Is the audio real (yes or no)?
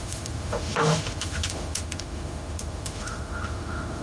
no